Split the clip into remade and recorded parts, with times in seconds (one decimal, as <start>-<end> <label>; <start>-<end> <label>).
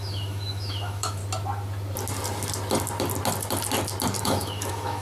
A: 0.0-1.2 remade; 1.2-4.2 recorded; 4.2-5.0 remade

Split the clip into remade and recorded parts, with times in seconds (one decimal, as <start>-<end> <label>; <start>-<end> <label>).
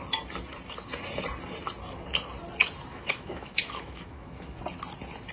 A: 0.0-2.9 recorded; 2.9-4.6 remade; 4.6-5.3 recorded